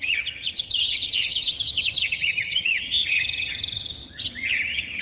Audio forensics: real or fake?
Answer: fake